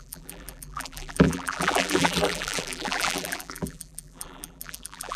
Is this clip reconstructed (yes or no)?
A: yes